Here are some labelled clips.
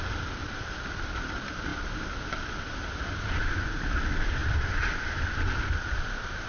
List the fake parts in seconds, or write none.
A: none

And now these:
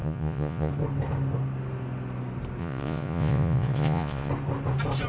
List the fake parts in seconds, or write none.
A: 0.0-0.7 (vocoder, Vocos); 2.6-4.3

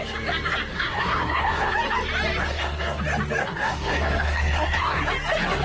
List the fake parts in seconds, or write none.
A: 0.7-1.7 (codec, SNAC); 2.4-3.0; 3.4-5.0

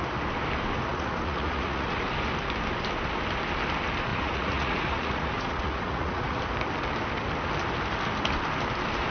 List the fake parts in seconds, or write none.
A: 0.9-2.1 (vocoder, Vocos); 4.1-6.4

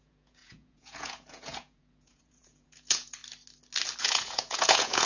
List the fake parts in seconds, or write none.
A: 0.0-3.2 (vocoder, Vocos); 4.0-5.1

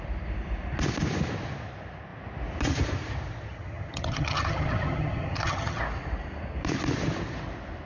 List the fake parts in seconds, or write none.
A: 3.5-5.8 (vocoder, HiFi-GAN)

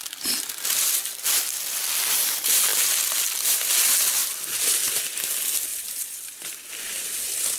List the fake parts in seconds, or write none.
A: 5.7-6.7 (vocoder, BigVGAN v2)

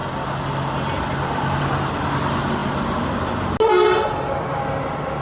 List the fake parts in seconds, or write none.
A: none